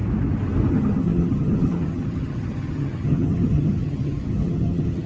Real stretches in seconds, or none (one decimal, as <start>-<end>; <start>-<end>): 0.0-0.7